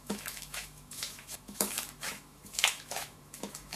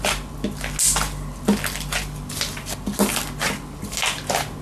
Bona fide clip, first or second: second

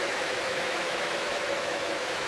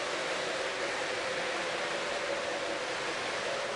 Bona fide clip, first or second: second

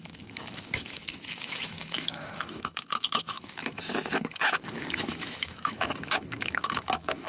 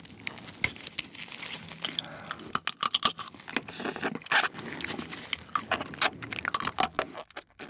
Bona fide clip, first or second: second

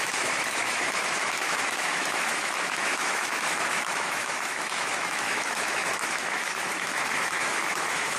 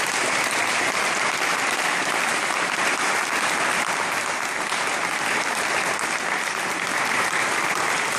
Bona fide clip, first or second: second